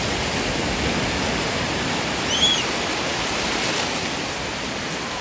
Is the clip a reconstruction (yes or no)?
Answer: no